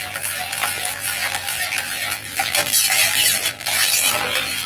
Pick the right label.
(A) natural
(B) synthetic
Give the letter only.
B